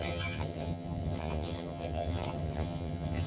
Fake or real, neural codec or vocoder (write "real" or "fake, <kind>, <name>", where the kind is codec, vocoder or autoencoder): fake, vocoder, HiFi-GAN